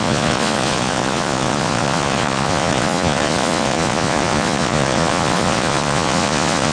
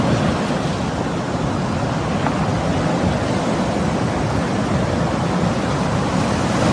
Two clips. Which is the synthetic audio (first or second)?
first